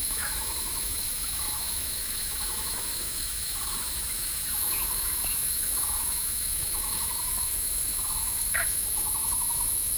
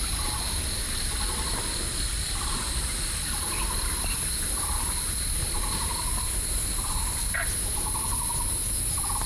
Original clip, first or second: second